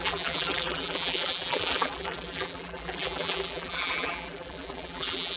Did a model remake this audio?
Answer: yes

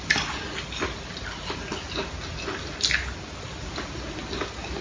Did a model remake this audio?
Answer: no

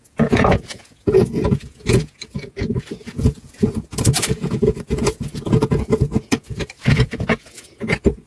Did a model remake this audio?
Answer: yes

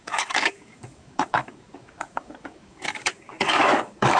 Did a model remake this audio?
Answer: yes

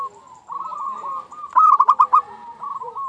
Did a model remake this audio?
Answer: no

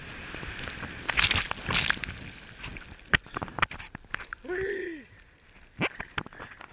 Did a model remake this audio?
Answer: no